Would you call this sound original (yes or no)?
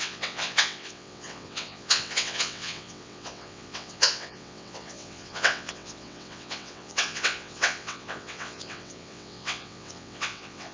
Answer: no